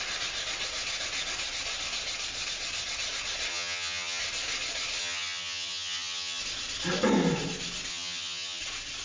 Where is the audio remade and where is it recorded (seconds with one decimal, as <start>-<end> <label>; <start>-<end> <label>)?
0.0-3.5 recorded; 3.5-4.2 remade; 4.2-5.0 recorded; 5.0-6.4 remade; 6.4-7.9 recorded; 7.9-8.6 remade; 8.6-9.0 recorded

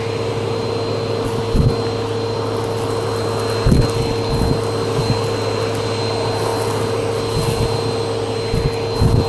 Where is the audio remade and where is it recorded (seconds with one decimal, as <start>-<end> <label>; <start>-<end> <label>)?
0.0-9.3 recorded

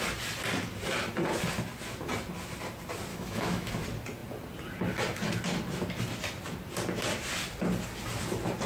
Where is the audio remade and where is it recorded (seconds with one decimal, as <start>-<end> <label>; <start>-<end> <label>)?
0.0-3.1 recorded; 3.1-3.7 remade; 3.7-8.7 recorded

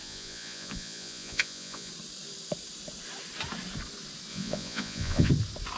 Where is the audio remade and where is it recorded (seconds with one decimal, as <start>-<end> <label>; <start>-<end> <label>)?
0.0-1.9 remade; 1.9-4.3 recorded; 4.3-5.3 remade; 5.3-5.8 recorded

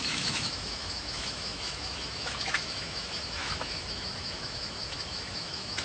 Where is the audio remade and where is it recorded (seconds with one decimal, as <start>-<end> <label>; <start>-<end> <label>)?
0.0-5.8 remade